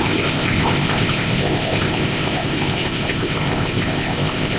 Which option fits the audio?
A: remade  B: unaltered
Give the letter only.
A